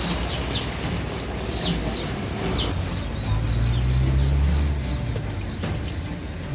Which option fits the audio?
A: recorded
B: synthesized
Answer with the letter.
A